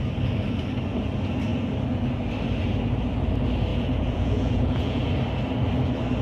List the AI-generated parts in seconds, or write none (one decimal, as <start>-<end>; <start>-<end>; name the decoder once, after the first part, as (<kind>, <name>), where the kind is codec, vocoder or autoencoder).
3.7-5.0 (vocoder, Vocos)